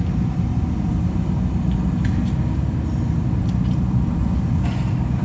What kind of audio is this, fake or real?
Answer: real